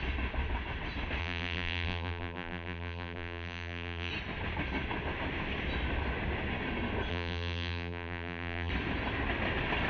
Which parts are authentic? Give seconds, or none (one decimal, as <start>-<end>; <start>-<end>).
0.0-1.2; 4.1-7.1; 8.7-9.9